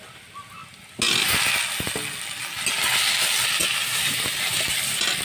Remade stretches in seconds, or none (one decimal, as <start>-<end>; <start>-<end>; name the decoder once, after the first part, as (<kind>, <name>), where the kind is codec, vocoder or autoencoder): 3.8-4.7 (vocoder, BigVGAN v2)